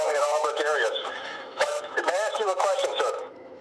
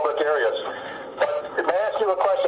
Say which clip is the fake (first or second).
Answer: first